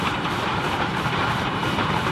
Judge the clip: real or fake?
fake